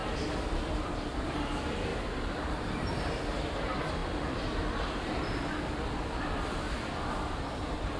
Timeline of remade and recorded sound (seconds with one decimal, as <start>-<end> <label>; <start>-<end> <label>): 0.0-0.8 recorded; 0.8-1.9 remade; 1.9-3.6 recorded; 3.6-8.0 remade